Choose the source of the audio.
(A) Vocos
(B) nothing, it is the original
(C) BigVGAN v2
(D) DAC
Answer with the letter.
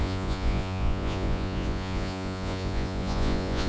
A